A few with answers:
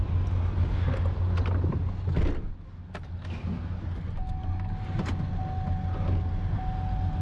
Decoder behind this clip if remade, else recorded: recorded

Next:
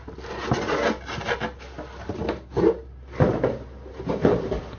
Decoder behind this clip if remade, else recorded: recorded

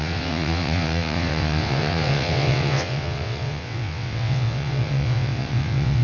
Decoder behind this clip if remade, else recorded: remade, vocoder, WaveNeXt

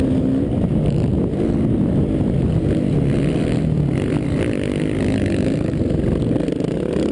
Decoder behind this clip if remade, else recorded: recorded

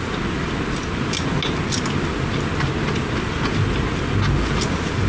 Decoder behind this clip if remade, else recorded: recorded